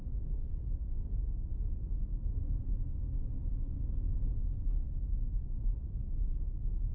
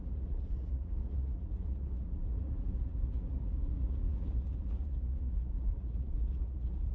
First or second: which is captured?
first